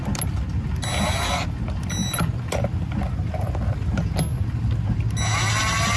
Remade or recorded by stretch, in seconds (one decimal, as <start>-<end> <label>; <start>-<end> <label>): 0.0-6.0 recorded